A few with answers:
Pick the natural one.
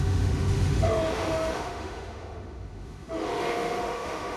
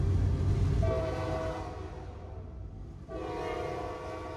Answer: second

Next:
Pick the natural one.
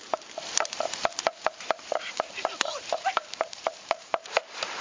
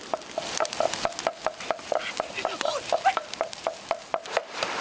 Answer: second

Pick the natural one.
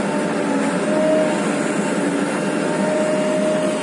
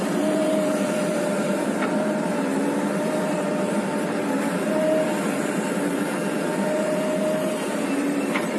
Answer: first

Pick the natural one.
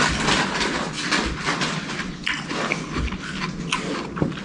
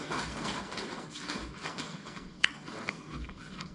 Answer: first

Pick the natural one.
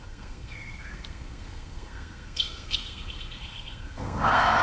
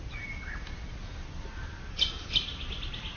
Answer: second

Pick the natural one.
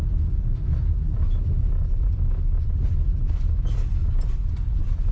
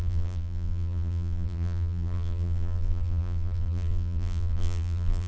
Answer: first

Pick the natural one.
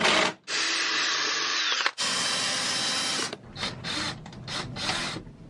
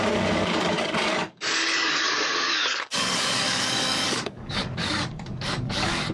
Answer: first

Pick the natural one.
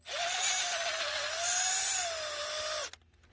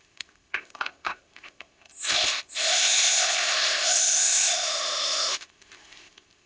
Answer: first